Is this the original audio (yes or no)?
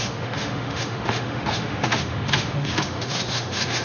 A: no